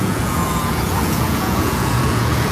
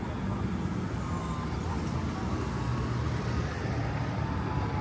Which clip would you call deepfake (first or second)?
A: first